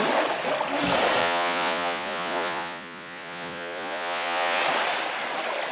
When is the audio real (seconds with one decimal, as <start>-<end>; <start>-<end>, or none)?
0.0-1.2; 4.6-5.7